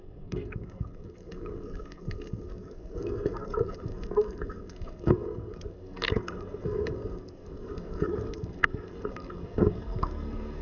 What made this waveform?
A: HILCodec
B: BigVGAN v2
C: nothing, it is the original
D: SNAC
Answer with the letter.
D